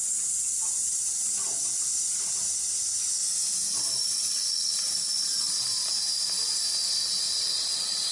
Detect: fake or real real